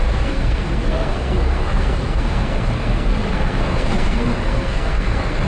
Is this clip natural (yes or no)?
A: no